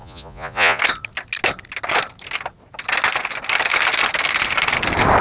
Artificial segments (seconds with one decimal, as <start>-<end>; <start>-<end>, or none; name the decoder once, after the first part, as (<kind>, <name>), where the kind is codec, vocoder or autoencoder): 0.0-0.8 (vocoder, Vocos)